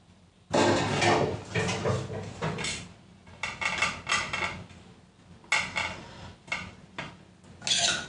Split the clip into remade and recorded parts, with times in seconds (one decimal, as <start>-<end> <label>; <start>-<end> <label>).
0.0-8.1 recorded